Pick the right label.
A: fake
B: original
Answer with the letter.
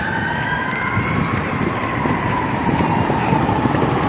A